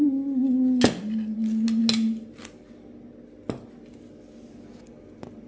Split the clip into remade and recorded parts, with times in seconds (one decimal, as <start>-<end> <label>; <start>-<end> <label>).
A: 0.0-5.5 recorded